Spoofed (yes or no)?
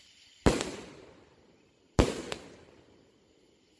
no